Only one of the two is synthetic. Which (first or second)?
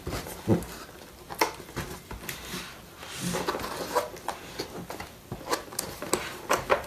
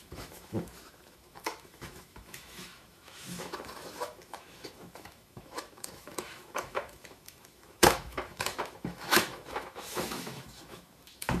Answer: second